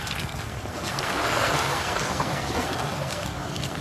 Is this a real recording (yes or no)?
no